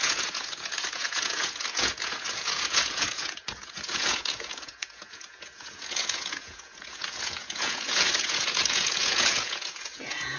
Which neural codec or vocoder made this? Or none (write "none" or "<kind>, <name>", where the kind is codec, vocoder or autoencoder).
vocoder, Vocos